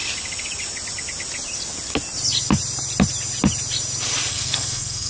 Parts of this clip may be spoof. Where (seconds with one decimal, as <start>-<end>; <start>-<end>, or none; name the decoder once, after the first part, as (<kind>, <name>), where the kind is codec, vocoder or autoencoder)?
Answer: 4.3-5.1 (codec, SNAC)